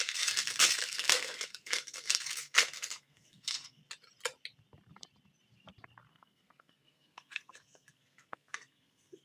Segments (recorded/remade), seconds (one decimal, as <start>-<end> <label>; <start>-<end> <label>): 0.0-3.8 remade; 3.8-6.1 recorded; 6.1-9.2 remade